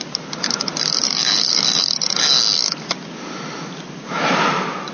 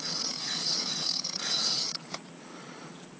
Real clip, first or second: first